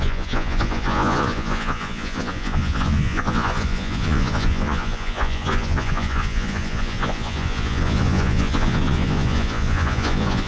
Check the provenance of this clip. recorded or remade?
remade